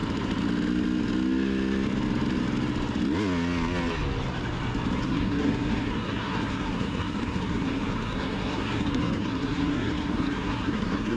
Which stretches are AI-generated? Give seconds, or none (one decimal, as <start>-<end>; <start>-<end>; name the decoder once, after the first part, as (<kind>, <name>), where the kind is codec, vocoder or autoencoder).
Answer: 5.0-11.2 (codec, SNAC)